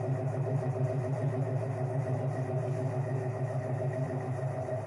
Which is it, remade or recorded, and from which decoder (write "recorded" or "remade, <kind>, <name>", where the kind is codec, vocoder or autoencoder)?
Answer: remade, vocoder, BigVGAN v2